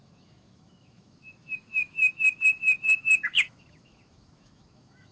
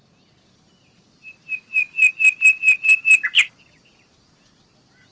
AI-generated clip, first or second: first